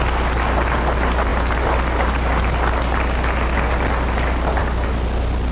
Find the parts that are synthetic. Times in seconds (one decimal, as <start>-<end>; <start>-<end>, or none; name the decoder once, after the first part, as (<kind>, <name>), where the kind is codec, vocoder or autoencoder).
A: none